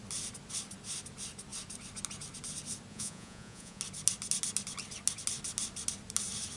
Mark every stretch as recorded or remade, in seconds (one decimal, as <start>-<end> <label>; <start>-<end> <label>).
0.0-2.9 recorded; 2.9-3.8 remade; 3.8-6.6 recorded